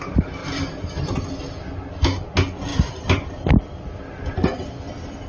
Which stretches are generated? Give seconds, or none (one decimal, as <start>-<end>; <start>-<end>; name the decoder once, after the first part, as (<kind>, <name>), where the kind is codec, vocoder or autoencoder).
0.4-1.2 (vocoder, BigVGAN v2)